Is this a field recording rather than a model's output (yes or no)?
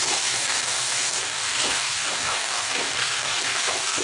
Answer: no